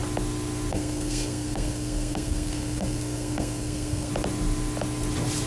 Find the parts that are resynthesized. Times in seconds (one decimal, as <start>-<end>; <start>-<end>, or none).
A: 0.7-4.1